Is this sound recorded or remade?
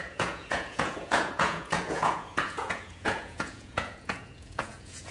remade